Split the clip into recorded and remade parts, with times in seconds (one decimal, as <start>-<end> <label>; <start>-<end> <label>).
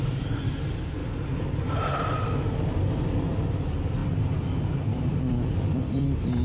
0.0-4.0 recorded; 4.0-6.0 remade; 6.0-6.4 recorded